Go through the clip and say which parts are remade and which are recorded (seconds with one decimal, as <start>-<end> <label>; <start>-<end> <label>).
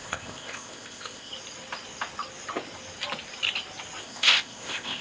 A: 0.0-1.3 remade; 1.3-4.0 recorded; 4.0-5.0 remade